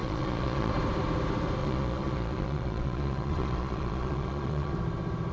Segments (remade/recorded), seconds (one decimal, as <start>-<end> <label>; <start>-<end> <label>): 0.0-0.7 remade; 0.7-1.6 recorded; 1.6-4.7 remade; 4.7-5.3 recorded